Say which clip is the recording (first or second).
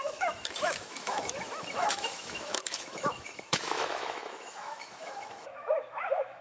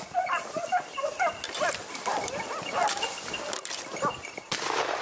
second